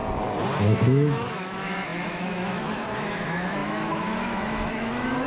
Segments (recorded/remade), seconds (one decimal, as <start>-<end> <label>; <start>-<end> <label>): 0.0-0.6 recorded; 0.6-5.3 remade